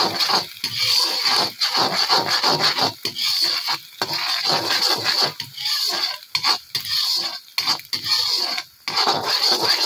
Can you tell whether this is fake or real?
real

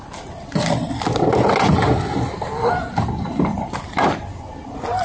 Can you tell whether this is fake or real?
real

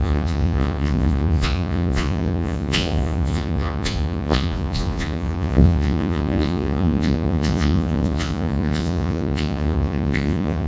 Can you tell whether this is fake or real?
fake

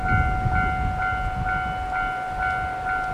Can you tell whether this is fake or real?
real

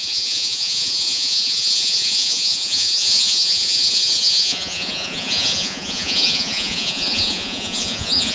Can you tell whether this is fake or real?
fake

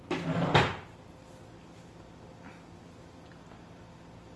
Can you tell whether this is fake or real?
real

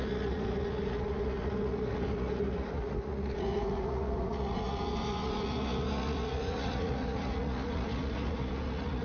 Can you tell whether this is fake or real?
fake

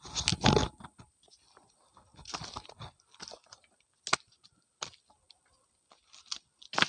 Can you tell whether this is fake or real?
real